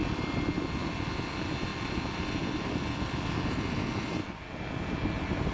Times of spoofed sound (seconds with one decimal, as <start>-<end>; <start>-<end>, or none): none